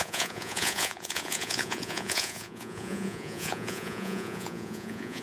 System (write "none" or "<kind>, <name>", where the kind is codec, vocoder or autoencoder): vocoder, Vocos